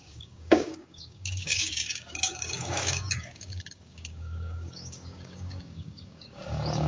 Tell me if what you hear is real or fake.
fake